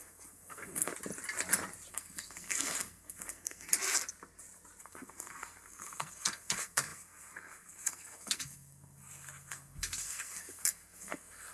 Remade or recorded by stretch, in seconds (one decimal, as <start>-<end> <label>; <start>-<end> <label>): 0.0-0.9 remade; 0.9-1.9 recorded; 1.9-3.7 remade; 3.7-4.8 recorded; 4.8-11.5 remade